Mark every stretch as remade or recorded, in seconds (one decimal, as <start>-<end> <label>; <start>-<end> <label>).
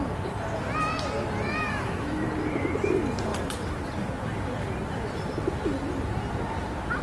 0.0-1.6 recorded; 1.6-2.3 remade; 2.3-7.0 recorded